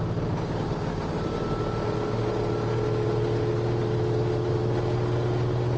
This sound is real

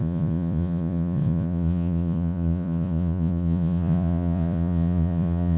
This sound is fake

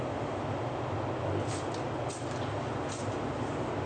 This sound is real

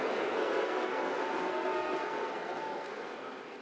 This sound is fake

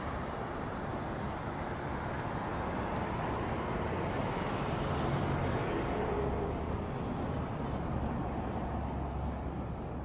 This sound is real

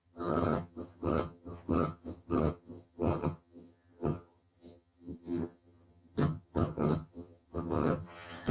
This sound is fake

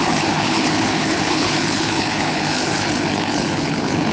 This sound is fake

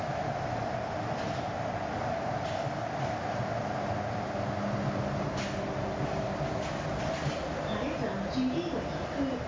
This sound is real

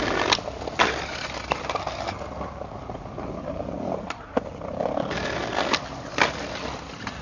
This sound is real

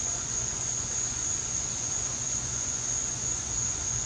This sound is fake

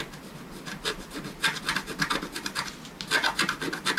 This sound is real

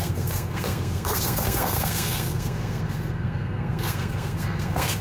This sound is fake